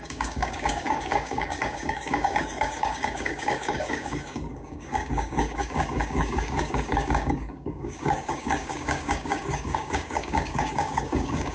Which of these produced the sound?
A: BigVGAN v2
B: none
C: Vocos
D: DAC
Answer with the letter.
D